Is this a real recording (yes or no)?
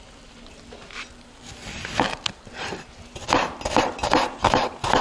yes